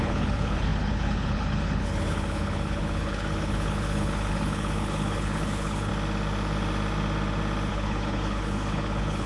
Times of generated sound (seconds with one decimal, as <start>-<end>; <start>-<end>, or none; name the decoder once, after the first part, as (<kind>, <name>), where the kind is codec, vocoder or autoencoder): 0.0-5.9 (codec, HILCodec); 7.7-9.3